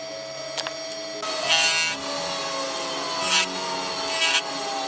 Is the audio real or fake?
real